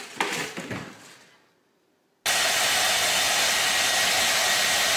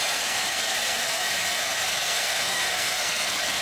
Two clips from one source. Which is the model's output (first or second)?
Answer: second